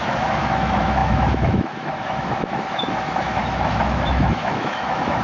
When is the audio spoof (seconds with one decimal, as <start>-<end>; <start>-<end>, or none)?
0.0-5.2